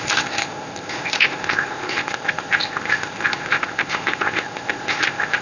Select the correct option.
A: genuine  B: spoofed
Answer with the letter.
B